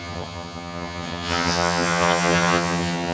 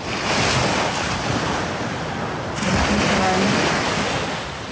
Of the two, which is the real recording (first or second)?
second